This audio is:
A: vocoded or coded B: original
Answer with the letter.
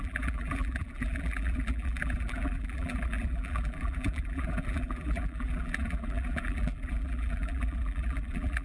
A